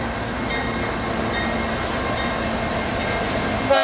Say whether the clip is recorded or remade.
recorded